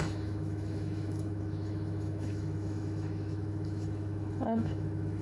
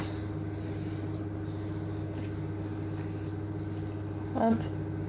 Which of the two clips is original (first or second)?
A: second